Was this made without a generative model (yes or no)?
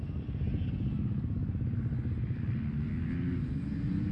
yes